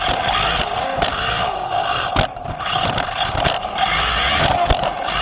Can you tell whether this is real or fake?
real